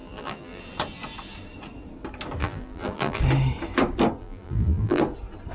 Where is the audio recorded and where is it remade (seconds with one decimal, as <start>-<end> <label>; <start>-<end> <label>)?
0.0-0.6 remade; 0.6-2.4 recorded; 2.4-3.2 remade; 3.2-4.2 recorded; 4.2-5.0 remade; 5.0-5.5 recorded